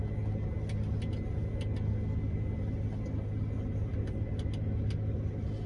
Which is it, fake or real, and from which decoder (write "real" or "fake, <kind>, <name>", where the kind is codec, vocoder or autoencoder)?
real